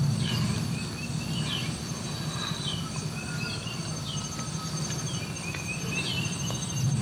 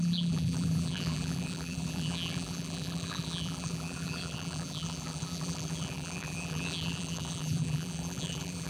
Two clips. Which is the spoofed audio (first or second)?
second